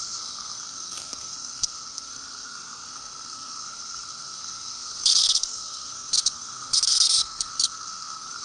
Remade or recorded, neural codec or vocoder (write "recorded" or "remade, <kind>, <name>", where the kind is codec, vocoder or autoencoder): remade, codec, SNAC